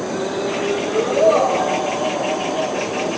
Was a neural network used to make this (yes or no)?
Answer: yes